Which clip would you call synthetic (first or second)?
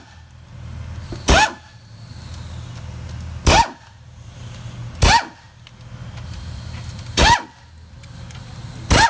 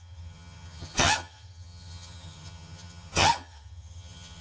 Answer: second